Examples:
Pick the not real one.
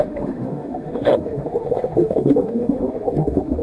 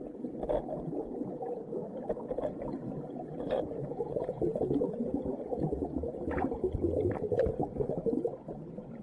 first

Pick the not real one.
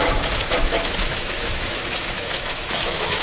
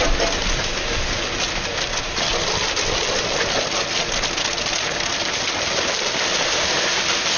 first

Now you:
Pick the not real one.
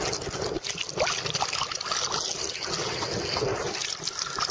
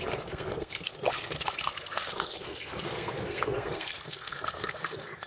second